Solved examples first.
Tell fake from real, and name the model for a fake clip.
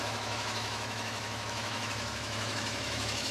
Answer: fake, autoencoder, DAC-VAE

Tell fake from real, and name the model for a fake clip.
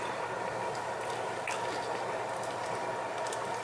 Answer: real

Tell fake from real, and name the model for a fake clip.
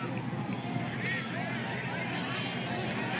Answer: real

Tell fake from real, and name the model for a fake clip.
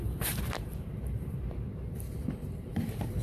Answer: fake, vocoder, BigVGAN v2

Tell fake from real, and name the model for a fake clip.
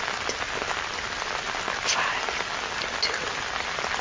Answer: real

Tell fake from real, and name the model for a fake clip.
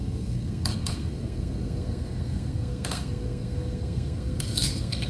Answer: fake, codec, SNAC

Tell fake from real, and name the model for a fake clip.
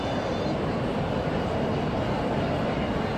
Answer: real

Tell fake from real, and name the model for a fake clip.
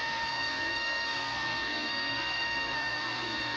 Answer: fake, codec, SNAC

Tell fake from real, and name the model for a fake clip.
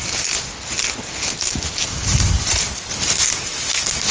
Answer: real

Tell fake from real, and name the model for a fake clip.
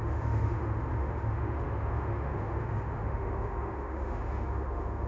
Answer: fake, autoencoder, DAC-VAE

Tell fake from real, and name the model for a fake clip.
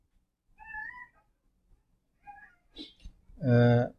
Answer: real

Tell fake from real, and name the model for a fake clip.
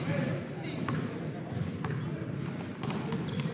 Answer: real